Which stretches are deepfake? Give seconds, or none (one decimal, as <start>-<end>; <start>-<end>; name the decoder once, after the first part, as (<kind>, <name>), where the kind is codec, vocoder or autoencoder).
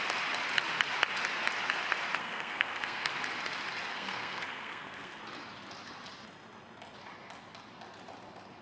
2.2-3.1 (codec, SNAC); 3.9-5.2